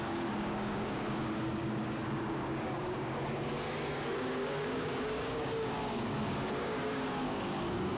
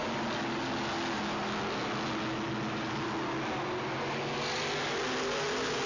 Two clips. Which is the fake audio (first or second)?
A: first